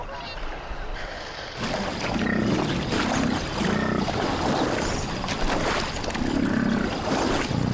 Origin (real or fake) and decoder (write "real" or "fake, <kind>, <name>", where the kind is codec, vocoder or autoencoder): real